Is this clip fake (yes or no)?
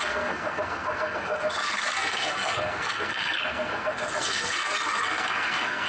yes